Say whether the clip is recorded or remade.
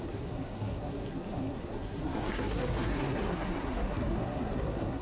remade